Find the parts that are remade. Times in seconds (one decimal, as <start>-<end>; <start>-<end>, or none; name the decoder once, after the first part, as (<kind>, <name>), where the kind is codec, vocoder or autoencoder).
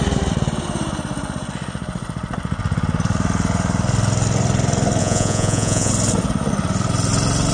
5.0-5.9 (vocoder, Vocos)